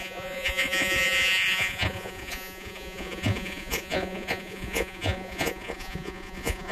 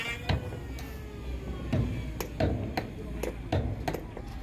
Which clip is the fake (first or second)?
first